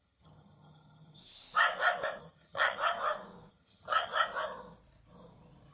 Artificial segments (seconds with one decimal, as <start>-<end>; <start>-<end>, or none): 0.0-1.2; 2.2-2.8; 3.5-4.1